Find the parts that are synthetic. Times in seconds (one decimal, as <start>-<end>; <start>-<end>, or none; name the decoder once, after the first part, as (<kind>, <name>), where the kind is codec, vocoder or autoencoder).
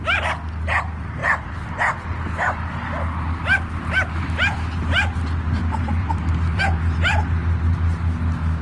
1.2-2.3 (vocoder, BigVGAN v2); 6.0-6.6